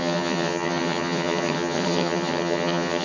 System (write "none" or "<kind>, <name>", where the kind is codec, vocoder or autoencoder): vocoder, HiFi-GAN